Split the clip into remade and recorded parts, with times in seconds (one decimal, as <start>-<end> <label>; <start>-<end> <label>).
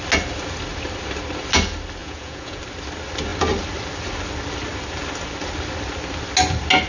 0.0-2.0 recorded; 2.0-2.6 remade; 2.6-6.9 recorded